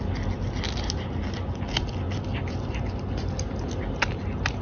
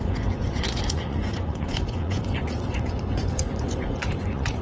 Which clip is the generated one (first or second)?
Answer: second